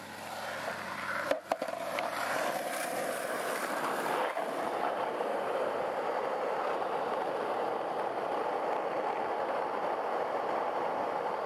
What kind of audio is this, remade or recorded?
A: remade